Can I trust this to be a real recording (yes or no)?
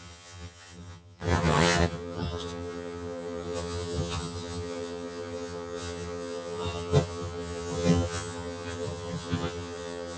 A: no